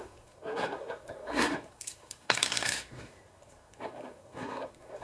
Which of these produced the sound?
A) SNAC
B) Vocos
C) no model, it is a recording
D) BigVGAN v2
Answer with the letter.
A